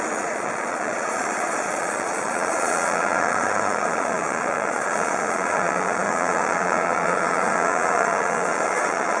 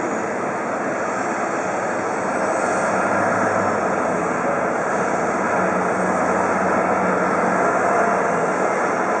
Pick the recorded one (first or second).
second